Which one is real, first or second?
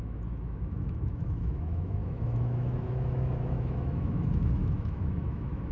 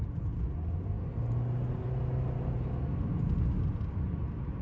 second